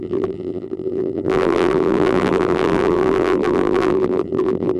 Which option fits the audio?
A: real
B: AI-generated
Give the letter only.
B